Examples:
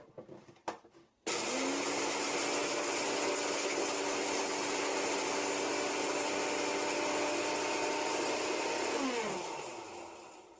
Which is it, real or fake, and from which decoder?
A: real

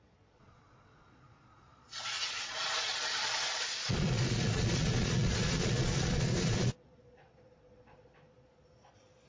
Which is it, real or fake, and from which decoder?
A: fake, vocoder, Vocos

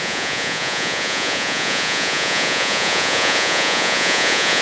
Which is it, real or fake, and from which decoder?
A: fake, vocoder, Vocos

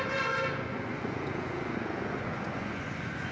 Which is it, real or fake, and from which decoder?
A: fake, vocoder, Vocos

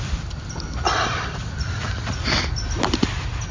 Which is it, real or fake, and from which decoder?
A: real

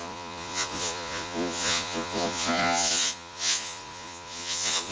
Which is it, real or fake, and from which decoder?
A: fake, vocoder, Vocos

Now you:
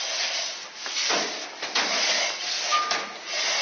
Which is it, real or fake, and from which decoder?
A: real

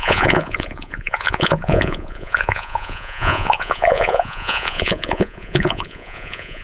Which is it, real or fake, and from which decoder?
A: fake, vocoder, Vocos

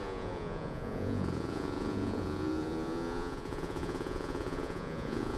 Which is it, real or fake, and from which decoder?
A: fake, vocoder, Vocos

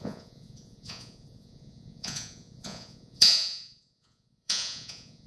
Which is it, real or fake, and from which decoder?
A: fake, vocoder, Vocos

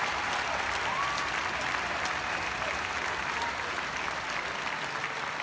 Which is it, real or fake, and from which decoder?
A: real